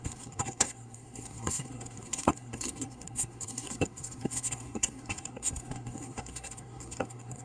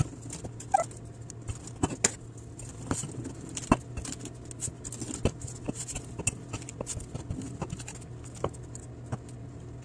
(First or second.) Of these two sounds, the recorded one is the second